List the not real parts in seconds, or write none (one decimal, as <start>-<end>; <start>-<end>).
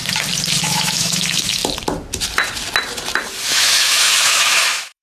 0.6-1.6; 3.5-5.0